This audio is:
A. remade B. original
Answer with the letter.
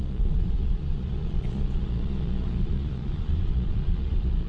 A